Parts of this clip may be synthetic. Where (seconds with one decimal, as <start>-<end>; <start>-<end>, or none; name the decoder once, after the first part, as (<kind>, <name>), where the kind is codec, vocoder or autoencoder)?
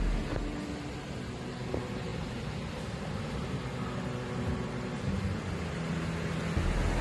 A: none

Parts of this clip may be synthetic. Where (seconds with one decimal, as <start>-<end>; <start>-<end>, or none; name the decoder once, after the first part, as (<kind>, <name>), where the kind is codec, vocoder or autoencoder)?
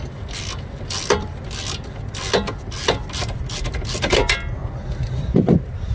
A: none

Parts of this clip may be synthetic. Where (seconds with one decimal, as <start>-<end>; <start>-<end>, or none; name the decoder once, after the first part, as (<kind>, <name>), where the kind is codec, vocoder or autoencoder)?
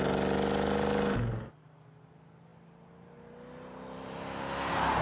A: none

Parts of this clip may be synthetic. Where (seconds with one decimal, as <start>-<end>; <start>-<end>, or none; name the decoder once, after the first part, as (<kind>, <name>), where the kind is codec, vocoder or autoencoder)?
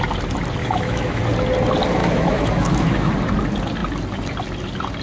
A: 0.6-1.2 (autoencoder, DAC-VAE); 2.0-3.1